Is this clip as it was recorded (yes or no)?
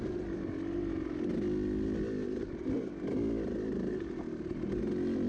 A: yes